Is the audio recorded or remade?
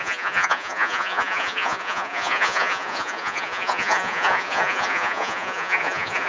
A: remade